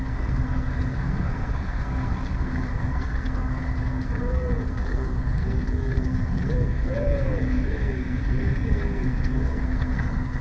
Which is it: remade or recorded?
remade